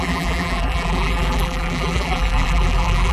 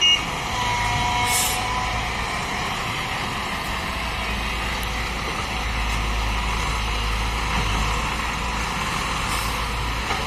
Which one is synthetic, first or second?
first